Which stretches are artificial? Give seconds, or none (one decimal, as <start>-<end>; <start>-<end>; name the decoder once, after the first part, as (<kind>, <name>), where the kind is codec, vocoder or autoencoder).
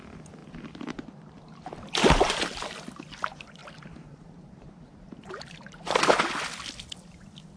0.4-1.0 (vocoder, BigVGAN v2); 3.6-6.0